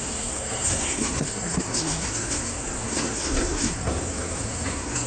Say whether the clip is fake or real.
fake